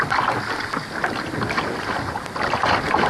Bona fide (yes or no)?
yes